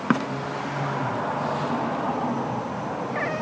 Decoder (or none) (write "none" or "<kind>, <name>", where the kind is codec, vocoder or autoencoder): none